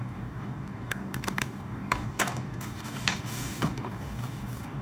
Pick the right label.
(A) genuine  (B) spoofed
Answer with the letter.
B